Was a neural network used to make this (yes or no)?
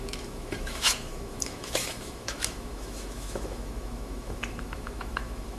yes